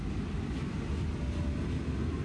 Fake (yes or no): no